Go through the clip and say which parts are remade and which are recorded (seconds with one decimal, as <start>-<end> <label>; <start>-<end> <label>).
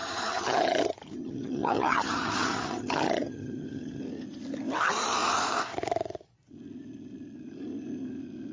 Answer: 0.0-4.0 remade; 4.0-8.5 recorded